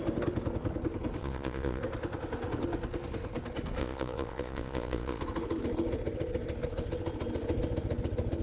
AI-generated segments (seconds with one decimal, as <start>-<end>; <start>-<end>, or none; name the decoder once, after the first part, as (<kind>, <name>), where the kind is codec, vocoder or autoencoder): 1.2-1.8 (vocoder, Vocos); 3.8-5.2